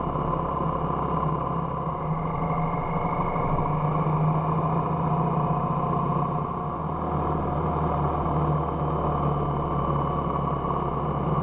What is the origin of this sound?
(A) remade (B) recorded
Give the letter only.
B